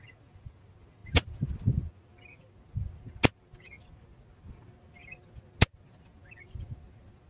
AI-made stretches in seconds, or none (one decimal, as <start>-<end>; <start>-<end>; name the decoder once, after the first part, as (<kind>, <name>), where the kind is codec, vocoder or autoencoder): none